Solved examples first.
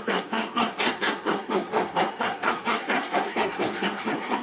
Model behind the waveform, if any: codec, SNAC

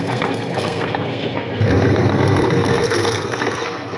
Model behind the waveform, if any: codec, SNAC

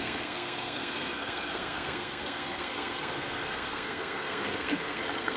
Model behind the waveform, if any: codec, SNAC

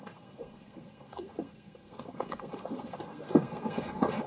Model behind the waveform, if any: codec, SNAC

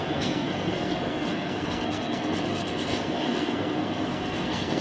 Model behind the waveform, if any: codec, SNAC